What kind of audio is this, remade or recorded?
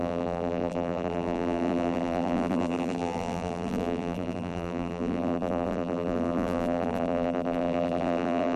remade